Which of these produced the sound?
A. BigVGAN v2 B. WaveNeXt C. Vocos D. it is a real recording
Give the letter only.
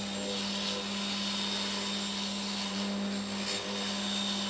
D